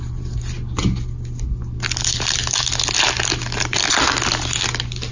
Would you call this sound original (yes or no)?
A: yes